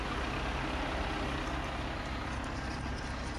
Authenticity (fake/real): real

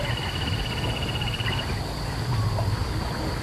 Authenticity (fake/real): real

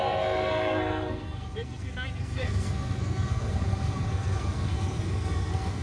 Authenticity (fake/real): fake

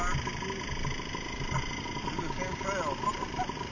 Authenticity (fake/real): real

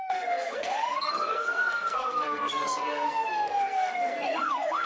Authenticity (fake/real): fake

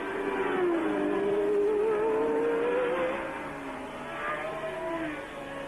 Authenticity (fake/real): real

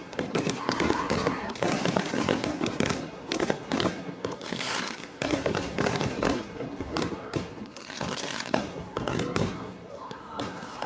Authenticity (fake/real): fake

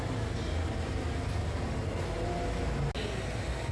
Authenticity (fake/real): real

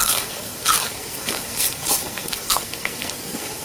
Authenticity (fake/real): fake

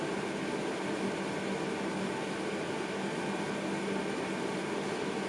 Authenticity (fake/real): real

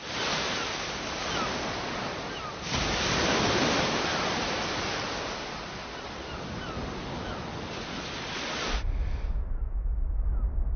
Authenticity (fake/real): real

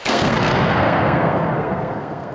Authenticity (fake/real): fake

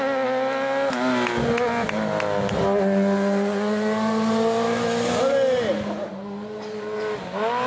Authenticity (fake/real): real